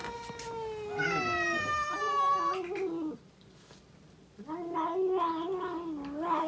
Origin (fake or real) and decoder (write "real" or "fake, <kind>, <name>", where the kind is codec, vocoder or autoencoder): real